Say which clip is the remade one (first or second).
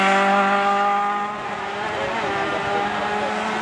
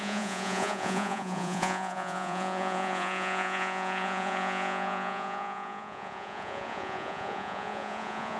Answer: second